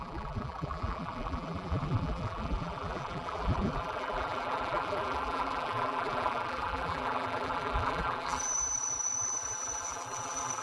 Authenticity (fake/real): fake